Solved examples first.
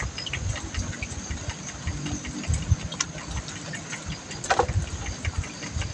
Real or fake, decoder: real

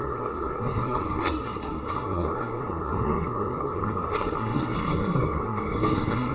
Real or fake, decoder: fake, codec, SNAC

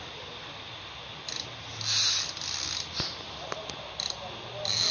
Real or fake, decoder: real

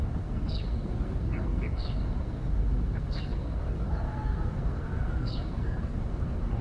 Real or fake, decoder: fake, codec, SNAC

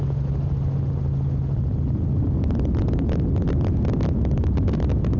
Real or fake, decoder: real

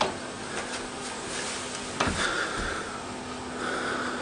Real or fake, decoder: real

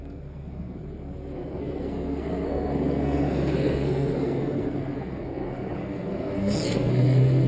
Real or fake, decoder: fake, codec, SNAC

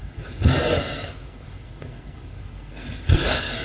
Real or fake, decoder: fake, codec, SNAC